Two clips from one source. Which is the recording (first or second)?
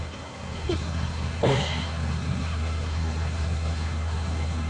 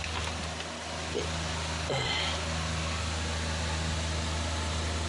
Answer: second